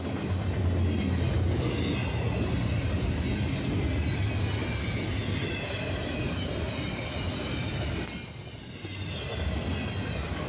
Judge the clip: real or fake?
real